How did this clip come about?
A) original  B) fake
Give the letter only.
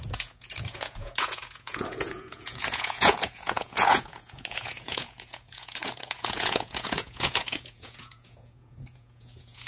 B